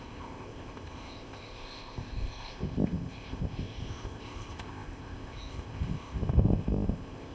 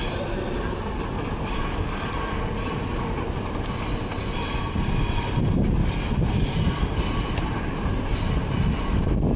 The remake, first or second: first